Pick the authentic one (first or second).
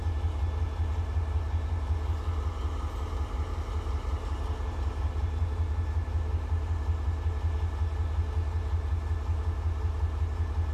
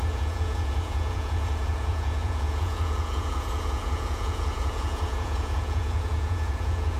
first